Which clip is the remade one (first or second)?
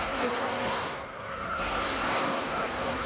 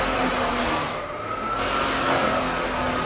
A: first